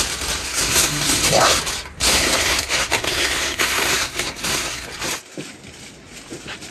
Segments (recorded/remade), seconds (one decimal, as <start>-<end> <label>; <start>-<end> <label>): 0.0-0.4 recorded; 0.4-1.6 remade; 1.6-2.0 recorded; 2.0-4.9 remade; 4.9-6.7 recorded